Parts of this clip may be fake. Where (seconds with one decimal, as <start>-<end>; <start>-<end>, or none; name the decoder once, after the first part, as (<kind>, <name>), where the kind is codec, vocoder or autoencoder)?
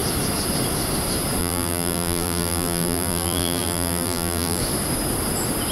1.4-4.6 (vocoder, BigVGAN v2)